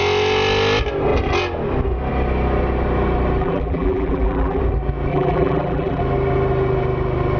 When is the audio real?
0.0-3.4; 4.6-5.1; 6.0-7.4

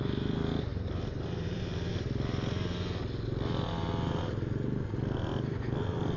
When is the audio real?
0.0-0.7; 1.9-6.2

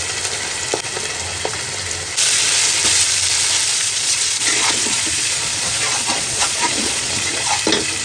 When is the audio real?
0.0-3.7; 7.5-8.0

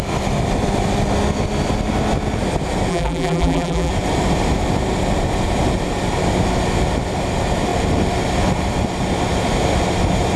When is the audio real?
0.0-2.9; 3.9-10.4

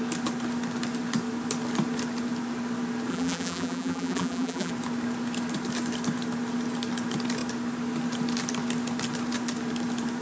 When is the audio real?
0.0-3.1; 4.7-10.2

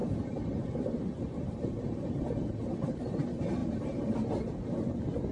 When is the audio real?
3.2-3.6; 4.4-5.3

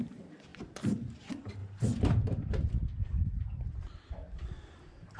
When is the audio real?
0.5-1.2; 1.6-2.1; 3.5-5.2

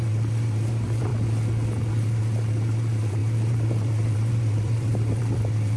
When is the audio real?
1.1-1.9